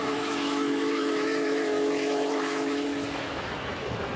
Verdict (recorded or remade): remade